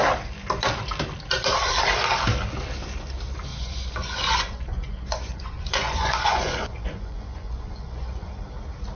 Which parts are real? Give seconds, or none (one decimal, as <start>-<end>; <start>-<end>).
0.0-3.5; 8.3-8.9